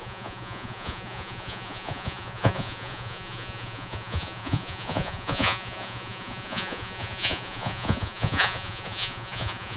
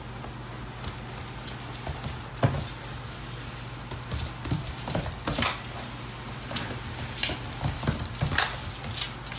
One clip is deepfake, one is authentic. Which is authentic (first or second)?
second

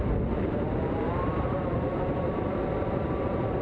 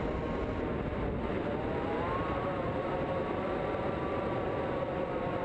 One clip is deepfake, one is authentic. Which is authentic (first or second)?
second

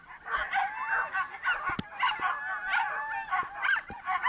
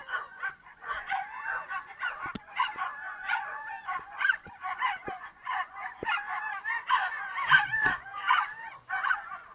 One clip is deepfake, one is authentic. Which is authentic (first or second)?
first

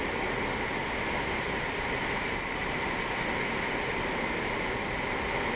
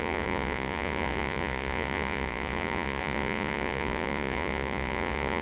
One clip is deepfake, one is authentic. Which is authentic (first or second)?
first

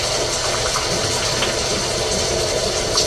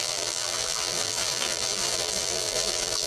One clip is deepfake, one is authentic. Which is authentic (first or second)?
first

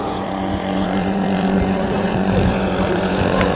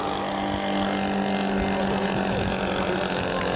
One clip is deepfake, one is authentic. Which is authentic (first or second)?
second